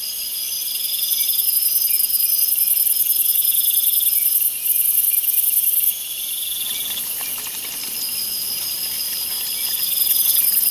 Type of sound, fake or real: real